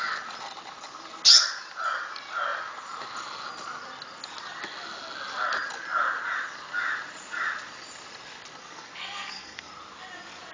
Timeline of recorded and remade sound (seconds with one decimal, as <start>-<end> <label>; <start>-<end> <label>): 0.0-8.6 recorded; 8.6-9.7 remade; 9.7-10.5 recorded